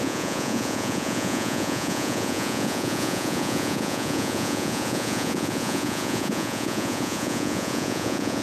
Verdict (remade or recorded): remade